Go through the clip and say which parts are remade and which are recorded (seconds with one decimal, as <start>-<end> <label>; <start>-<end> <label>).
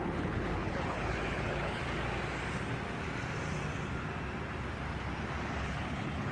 0.0-1.8 remade; 1.8-5.6 recorded; 5.6-6.3 remade